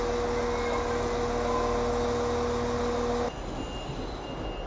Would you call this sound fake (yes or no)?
no